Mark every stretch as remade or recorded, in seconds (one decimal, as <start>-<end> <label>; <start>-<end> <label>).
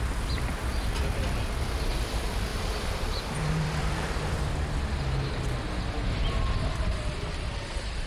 0.0-2.5 recorded; 2.5-4.1 remade; 4.1-8.1 recorded